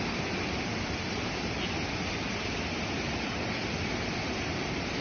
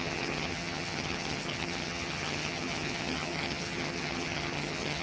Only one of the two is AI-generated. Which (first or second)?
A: second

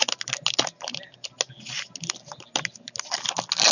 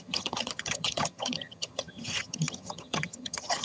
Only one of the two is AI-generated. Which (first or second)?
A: second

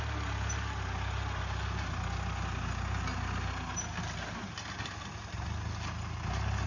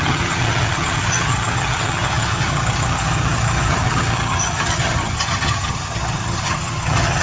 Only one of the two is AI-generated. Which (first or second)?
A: second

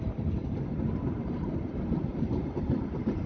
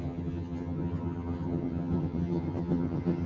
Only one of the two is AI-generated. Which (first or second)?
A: second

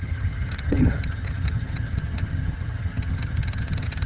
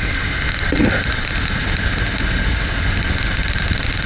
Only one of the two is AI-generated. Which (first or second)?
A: first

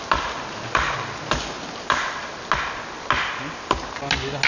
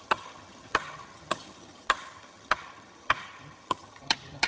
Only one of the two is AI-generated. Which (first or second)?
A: second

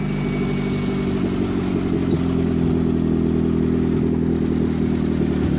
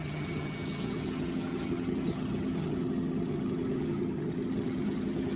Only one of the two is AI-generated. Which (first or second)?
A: second